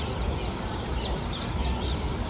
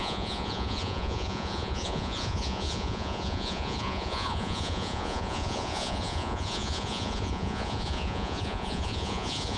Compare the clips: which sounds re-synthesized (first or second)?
second